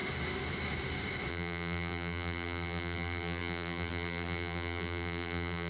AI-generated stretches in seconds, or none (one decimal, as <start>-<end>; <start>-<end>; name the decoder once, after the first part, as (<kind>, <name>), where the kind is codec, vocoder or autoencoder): 1.3-5.7 (vocoder, BigVGAN v2)